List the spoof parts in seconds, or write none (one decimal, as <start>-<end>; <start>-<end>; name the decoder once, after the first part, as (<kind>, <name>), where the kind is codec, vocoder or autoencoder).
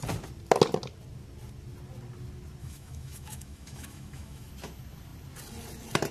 2.6-4.5 (autoencoder, DAC-VAE)